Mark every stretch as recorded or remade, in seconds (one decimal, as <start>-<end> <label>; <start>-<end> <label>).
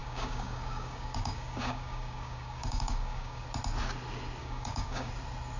0.0-3.4 remade; 3.4-4.4 recorded; 4.4-5.1 remade; 5.1-5.6 recorded